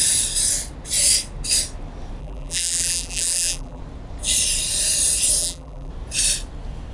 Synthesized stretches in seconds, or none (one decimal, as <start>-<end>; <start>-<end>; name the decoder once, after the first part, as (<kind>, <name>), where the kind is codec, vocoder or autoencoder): 2.2-3.8 (vocoder, BigVGAN v2); 5.4-5.9